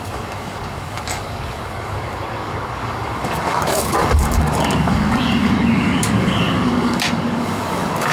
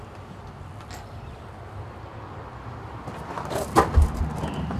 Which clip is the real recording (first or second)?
second